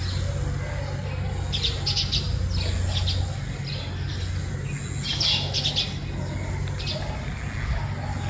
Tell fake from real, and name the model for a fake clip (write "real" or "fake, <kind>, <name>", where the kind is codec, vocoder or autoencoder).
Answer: real